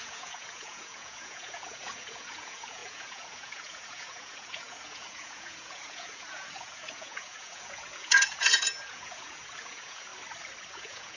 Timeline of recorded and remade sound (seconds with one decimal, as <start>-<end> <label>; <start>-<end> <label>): 0.0-10.1 remade; 10.1-10.7 recorded; 10.7-11.2 remade